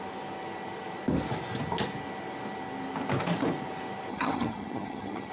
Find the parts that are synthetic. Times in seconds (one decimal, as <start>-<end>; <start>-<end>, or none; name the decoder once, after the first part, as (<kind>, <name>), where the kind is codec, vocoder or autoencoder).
4.1-5.3 (vocoder, HiFi-GAN)